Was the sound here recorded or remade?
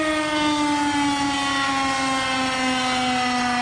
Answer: recorded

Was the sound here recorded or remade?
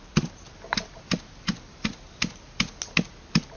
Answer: recorded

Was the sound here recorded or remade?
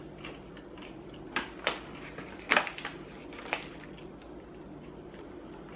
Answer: recorded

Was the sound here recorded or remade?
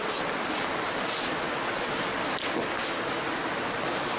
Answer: recorded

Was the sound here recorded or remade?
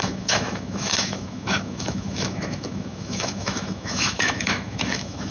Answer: remade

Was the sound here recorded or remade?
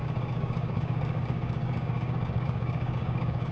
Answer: remade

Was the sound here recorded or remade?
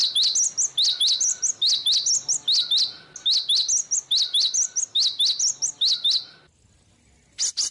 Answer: recorded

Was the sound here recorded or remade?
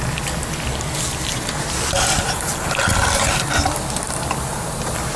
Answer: recorded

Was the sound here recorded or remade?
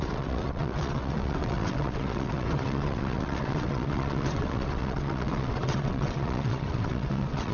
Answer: remade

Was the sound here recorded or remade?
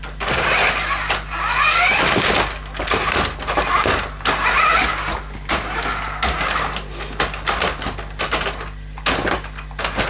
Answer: recorded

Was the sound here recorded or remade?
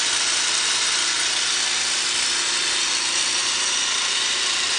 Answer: recorded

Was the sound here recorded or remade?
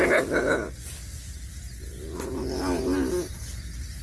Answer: recorded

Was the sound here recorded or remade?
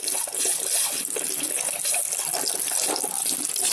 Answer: recorded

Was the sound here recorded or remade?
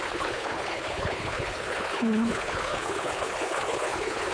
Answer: remade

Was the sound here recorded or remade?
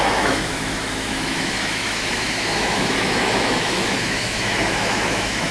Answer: remade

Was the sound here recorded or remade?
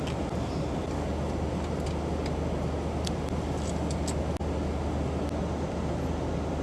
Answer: recorded